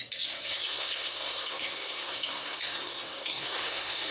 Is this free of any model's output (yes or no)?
no